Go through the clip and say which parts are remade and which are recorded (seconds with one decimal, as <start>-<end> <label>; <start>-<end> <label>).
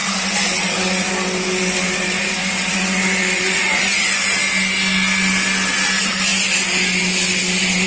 0.0-1.1 remade; 1.1-2.4 recorded; 2.4-4.2 remade; 4.2-7.9 recorded